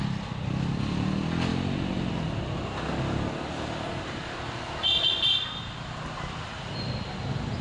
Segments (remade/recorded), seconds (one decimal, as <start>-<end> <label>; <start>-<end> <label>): 0.0-7.6 recorded